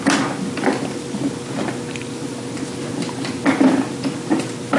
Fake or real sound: real